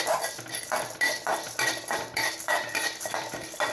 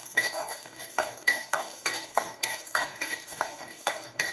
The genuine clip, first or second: first